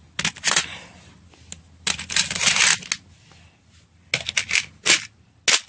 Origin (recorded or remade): recorded